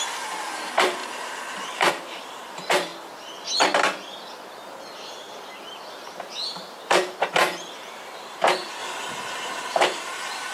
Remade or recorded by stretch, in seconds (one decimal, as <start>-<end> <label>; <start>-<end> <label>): 0.0-2.9 remade; 2.9-5.9 recorded; 5.9-8.8 remade; 8.8-9.8 recorded; 9.8-10.5 remade